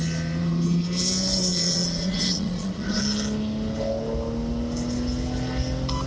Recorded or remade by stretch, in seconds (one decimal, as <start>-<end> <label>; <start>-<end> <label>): 0.0-1.5 recorded; 1.5-3.0 remade; 3.0-6.1 recorded